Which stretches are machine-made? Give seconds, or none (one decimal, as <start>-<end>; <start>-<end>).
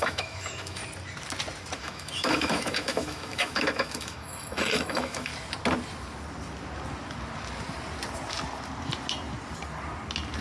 0.0-0.8; 1.8-5.3